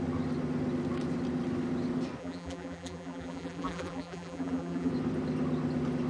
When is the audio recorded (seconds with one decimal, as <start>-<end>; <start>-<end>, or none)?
0.0-2.2; 4.9-6.1